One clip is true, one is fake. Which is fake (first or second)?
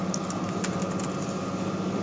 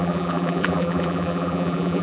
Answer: second